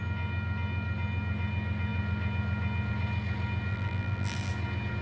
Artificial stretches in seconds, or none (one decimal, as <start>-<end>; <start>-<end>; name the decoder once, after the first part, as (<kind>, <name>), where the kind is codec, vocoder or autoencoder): 3.7-4.5 (vocoder, BigVGAN v2)